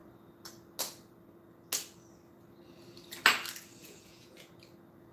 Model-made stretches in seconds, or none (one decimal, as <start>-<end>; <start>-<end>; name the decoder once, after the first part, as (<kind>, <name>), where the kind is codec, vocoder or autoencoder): 3.8-4.5 (vocoder, Vocos)